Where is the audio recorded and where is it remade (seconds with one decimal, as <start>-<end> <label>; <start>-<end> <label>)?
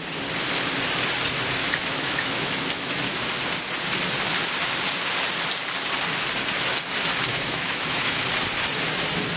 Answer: 0.0-1.6 recorded; 1.6-3.3 remade; 3.3-7.3 recorded; 7.3-8.2 remade; 8.2-9.4 recorded